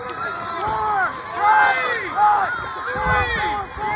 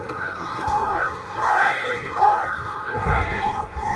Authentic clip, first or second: first